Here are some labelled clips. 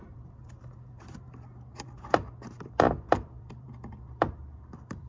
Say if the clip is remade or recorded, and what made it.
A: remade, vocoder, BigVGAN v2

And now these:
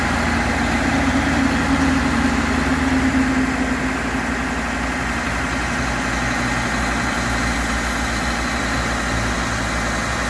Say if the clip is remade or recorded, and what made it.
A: recorded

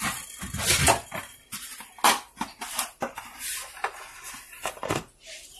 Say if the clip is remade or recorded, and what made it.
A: recorded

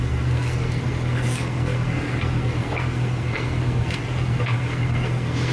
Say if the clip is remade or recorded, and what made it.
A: remade, codec, SNAC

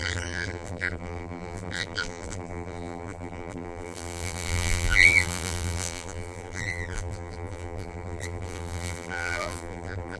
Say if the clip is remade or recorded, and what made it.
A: remade, vocoder, BigVGAN v2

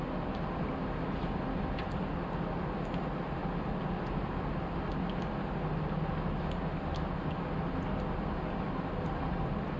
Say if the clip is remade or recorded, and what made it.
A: recorded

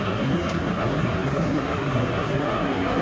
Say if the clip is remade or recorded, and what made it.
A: remade, codec, SNAC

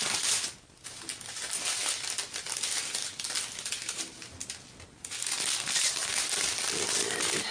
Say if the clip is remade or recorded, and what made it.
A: recorded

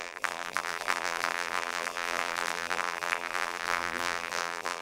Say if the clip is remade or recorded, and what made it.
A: remade, vocoder, BigVGAN v2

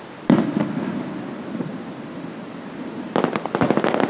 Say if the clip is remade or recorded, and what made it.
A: recorded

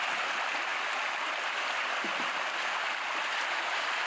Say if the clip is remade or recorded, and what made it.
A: recorded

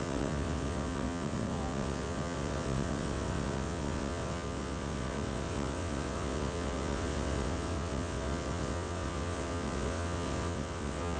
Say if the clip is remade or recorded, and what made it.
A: remade, vocoder, WaveNeXt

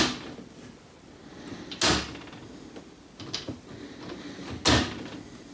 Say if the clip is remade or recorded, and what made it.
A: recorded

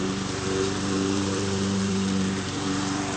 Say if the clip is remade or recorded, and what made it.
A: remade, vocoder, BigVGAN v2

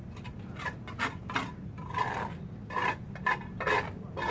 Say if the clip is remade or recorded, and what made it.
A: recorded